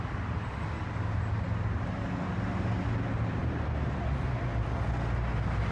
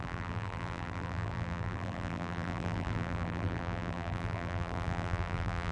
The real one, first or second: first